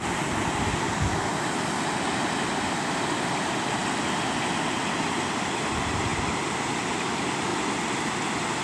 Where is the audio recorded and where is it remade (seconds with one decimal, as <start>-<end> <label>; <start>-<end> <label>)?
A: 0.0-8.6 recorded